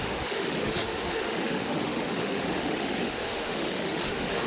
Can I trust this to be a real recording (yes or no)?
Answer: no